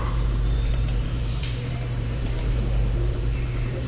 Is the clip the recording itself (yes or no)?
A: no